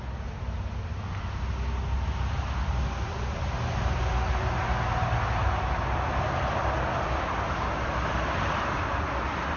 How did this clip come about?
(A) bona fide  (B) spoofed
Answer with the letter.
A